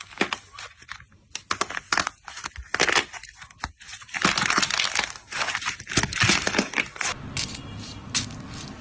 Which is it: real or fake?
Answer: real